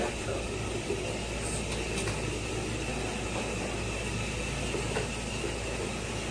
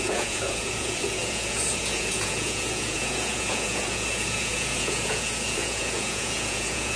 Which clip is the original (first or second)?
first